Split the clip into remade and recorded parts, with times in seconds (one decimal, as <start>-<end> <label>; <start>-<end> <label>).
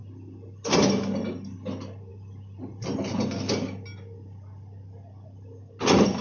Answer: 0.0-6.2 recorded